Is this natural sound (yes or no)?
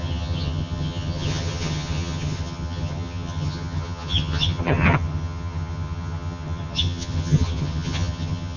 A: no